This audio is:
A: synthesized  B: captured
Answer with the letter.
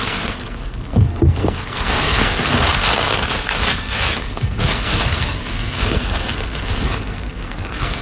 A